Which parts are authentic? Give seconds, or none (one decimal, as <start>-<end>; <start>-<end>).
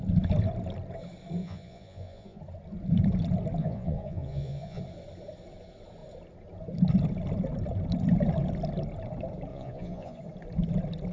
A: 0.0-1.4; 2.4-3.6; 4.8-9.5; 10.2-11.1